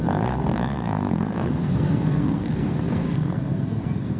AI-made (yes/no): yes